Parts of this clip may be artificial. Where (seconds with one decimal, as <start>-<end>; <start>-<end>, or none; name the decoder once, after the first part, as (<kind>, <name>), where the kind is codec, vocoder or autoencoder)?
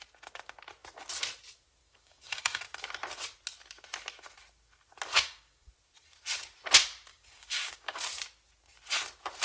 1.8-2.6 (codec, DAC); 5.1-5.7; 7.1-8.0